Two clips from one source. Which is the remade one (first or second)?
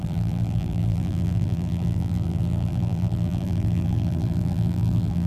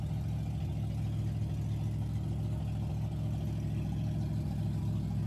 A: first